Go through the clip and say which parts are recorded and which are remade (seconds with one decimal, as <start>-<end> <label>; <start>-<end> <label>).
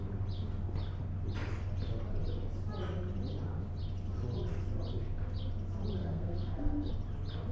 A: 0.0-6.0 recorded; 6.0-6.9 remade; 6.9-7.5 recorded